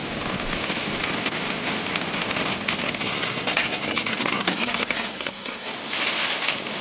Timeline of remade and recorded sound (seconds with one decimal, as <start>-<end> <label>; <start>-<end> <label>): 0.0-3.0 recorded; 3.0-5.7 remade; 5.7-6.8 recorded